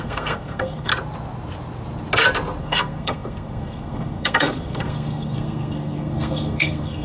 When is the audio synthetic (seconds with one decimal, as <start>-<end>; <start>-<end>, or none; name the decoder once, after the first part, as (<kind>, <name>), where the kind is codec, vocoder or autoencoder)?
0.0-0.9 (codec, SNAC); 2.6-7.0